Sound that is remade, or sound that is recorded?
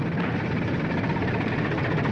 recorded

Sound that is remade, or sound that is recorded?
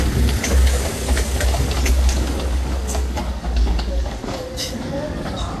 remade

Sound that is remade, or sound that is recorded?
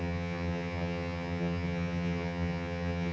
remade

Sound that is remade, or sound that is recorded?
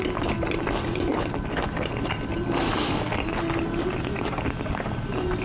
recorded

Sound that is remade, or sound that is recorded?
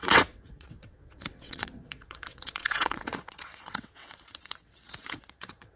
remade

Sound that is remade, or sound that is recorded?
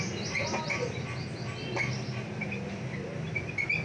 recorded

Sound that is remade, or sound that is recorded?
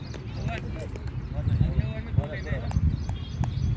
recorded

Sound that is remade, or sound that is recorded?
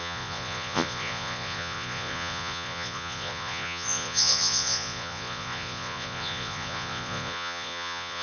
remade